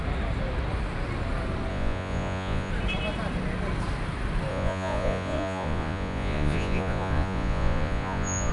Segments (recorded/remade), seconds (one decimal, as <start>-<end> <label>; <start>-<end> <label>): 0.0-1.7 recorded; 1.7-2.7 remade; 2.7-4.5 recorded; 4.5-8.5 remade